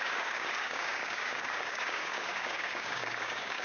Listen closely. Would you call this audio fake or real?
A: fake